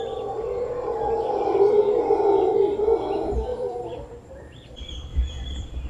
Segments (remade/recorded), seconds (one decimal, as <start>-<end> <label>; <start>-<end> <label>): 0.0-3.5 recorded; 3.5-4.2 remade; 4.2-5.1 recorded; 5.1-5.9 remade